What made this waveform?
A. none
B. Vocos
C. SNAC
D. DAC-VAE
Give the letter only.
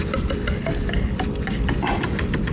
A